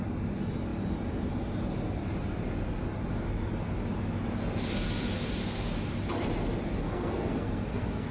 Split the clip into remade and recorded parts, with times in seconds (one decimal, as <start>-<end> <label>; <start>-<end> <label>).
0.0-6.8 recorded; 6.8-8.1 remade